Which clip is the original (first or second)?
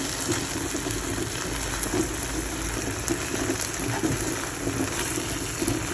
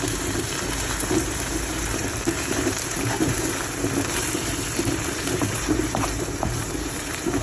first